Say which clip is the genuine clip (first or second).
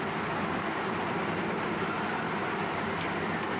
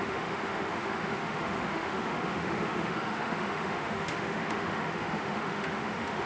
first